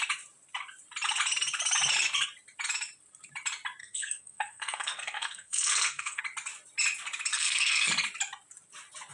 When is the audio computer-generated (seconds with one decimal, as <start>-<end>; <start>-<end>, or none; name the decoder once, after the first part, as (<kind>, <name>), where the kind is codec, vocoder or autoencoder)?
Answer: 3.8-6.2 (codec, SNAC); 7.3-7.9